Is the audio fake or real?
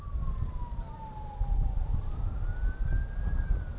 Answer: real